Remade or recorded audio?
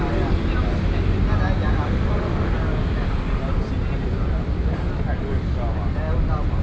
recorded